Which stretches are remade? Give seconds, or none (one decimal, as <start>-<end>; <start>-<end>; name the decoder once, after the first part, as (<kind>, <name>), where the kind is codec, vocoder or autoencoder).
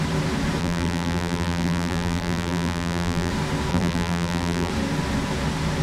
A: 0.6-3.3 (vocoder, BigVGAN v2); 3.7-4.7